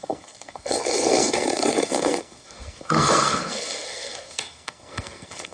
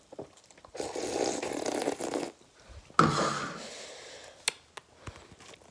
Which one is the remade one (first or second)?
first